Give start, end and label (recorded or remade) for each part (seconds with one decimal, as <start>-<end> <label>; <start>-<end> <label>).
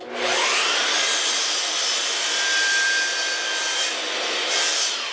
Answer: 0.0-5.1 recorded